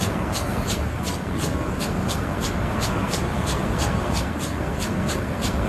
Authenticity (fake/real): fake